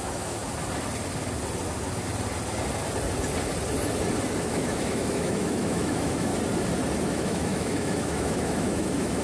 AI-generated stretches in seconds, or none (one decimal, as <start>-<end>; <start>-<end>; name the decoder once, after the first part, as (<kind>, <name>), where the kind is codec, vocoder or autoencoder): 0.0-0.4 (autoencoder, DAC-VAE); 4.4-6.3; 7.1-9.2